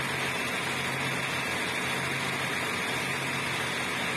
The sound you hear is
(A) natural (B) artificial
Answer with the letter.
A